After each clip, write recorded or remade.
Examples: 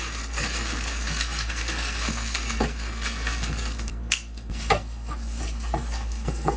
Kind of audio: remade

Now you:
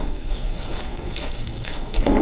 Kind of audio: remade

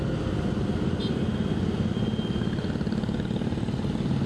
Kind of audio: recorded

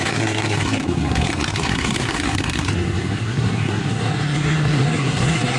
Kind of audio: remade